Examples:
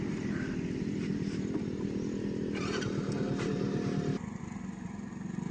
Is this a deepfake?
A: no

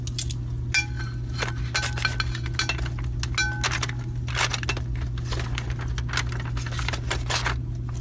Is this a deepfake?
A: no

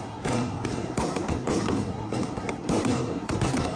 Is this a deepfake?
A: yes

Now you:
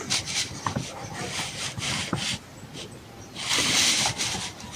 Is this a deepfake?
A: no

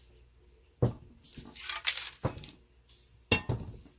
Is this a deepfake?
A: no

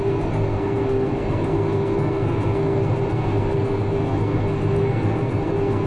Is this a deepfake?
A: yes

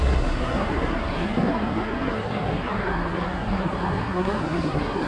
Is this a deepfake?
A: yes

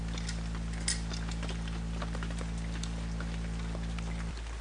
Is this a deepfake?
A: no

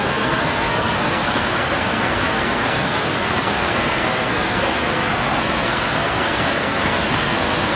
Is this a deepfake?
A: yes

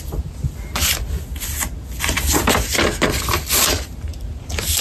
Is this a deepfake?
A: no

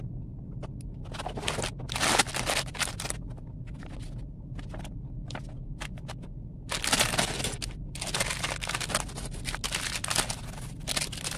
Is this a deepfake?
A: no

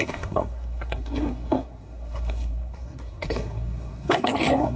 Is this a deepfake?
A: yes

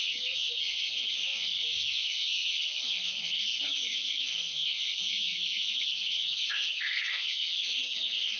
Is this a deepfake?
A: yes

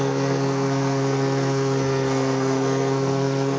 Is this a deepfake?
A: yes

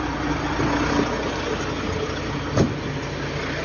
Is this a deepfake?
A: no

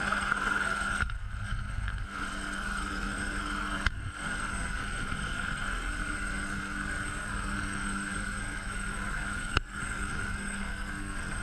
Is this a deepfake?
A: yes